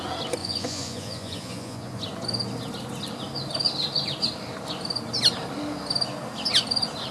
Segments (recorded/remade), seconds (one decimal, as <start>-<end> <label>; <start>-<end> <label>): 0.0-0.4 recorded; 0.4-2.0 remade; 2.0-7.1 recorded